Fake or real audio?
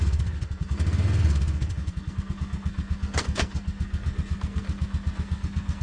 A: fake